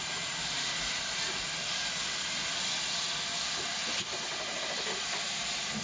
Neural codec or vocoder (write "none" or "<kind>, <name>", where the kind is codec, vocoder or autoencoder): none